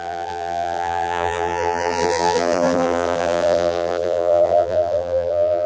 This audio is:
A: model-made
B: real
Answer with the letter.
A